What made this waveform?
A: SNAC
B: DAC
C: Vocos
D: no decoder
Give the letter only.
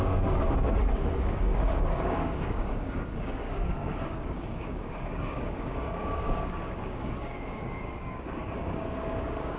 B